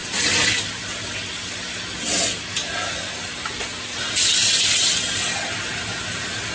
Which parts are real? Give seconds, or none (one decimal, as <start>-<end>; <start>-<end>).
0.0-6.5